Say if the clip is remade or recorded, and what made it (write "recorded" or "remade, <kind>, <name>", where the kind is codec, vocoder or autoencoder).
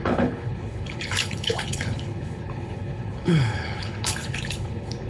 remade, codec, HILCodec